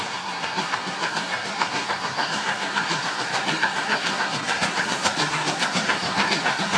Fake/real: fake